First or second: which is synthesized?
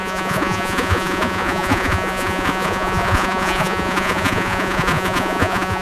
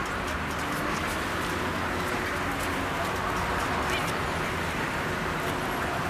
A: first